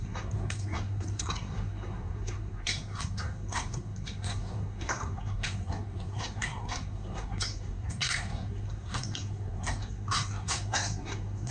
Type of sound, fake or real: fake